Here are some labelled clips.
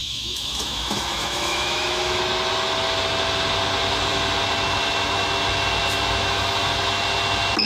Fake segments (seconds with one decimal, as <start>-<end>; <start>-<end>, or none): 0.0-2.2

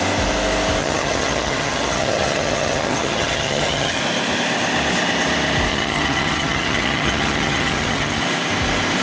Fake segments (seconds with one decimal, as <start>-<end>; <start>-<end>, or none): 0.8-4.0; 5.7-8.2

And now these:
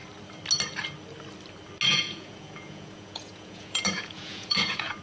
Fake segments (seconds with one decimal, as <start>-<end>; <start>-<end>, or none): 1.9-5.0

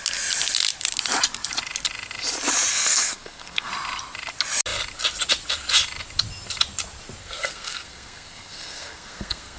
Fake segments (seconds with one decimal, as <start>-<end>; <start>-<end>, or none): 2.7-3.7; 7.2-9.6